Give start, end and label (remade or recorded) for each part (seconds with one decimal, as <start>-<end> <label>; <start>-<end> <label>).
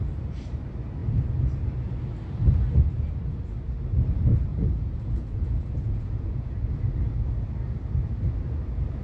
0.0-4.5 recorded; 4.5-6.8 remade; 6.8-9.0 recorded